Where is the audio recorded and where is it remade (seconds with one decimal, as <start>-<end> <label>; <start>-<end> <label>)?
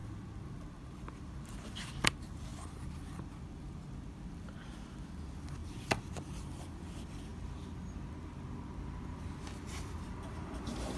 0.0-7.3 remade; 7.3-9.1 recorded; 9.1-11.0 remade